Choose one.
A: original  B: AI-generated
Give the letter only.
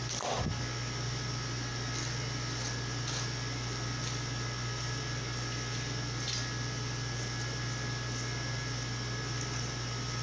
A